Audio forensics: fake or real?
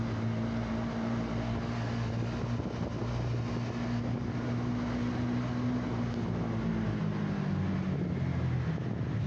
real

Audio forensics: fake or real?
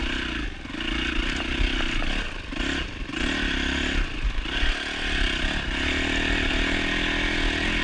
real